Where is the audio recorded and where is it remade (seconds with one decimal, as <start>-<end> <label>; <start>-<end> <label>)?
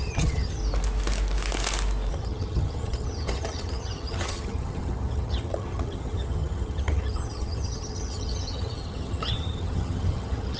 0.0-0.6 remade; 0.6-2.1 recorded; 2.1-10.6 remade